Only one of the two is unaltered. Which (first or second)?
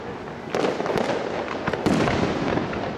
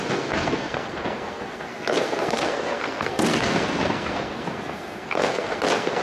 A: first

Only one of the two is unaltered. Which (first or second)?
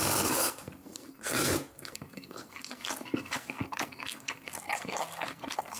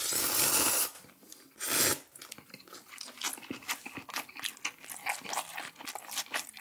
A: second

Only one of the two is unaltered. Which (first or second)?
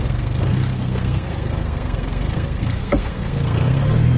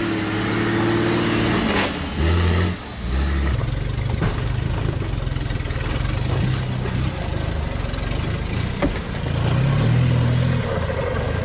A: second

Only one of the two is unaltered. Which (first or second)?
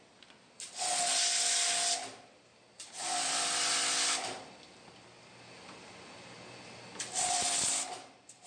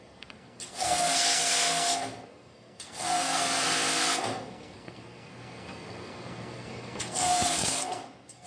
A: first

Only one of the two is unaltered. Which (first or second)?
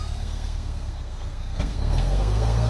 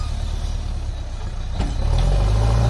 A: second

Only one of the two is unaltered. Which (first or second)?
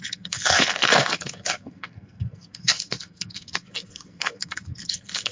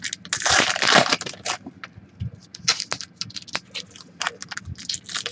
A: second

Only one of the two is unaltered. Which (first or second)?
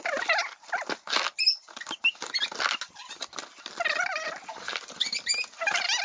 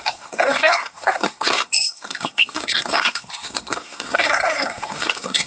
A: first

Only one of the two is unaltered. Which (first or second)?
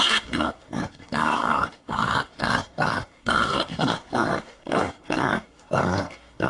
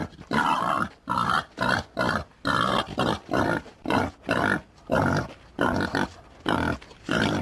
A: second